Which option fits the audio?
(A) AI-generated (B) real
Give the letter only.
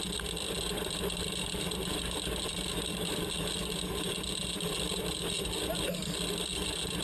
B